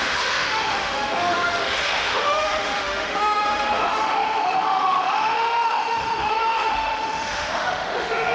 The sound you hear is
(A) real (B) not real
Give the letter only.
B